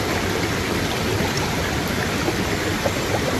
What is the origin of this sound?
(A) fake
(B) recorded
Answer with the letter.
B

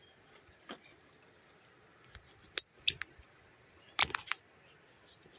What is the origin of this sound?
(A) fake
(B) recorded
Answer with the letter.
B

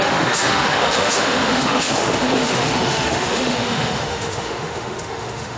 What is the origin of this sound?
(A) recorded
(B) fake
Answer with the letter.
B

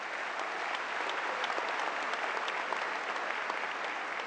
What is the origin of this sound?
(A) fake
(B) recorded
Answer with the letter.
B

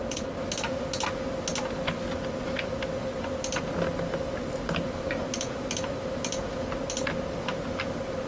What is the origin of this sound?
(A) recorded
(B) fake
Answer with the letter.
A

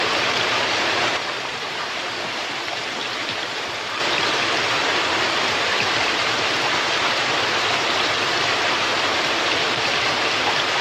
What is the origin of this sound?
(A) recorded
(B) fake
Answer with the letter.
B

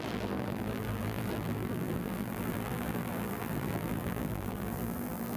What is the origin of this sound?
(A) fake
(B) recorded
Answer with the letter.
A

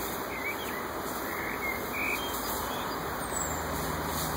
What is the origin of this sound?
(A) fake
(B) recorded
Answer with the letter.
B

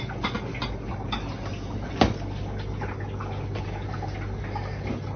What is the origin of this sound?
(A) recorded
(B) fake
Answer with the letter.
A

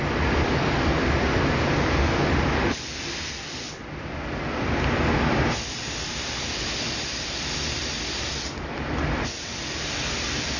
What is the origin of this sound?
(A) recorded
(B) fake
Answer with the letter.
B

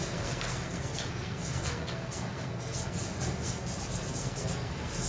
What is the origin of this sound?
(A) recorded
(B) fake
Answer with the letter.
B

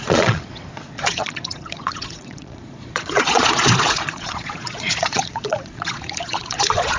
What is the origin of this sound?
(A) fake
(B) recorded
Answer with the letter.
A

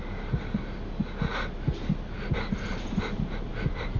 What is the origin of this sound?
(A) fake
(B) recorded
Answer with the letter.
B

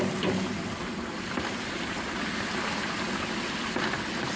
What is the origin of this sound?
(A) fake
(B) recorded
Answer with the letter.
B